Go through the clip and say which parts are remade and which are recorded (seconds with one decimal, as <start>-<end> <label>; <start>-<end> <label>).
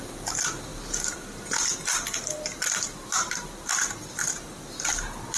0.0-5.4 recorded